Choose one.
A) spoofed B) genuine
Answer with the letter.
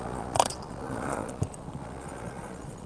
A